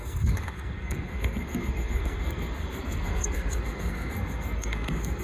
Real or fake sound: fake